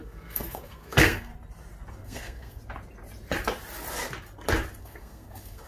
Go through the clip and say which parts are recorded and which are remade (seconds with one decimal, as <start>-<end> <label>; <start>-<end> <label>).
0.0-1.3 remade; 1.3-1.9 recorded; 1.9-2.6 remade; 2.6-4.8 recorded; 4.8-5.7 remade